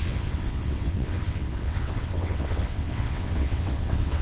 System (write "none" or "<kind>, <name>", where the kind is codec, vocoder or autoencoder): vocoder, WaveNeXt